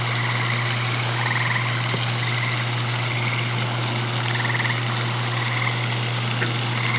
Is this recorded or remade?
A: recorded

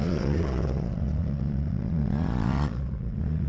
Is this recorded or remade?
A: remade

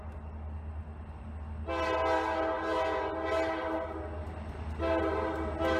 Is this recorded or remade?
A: recorded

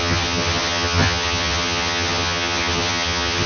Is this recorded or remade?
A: remade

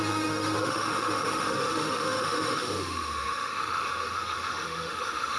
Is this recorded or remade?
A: remade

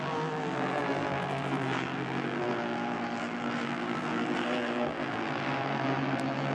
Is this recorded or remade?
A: remade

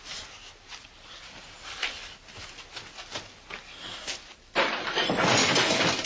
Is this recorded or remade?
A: recorded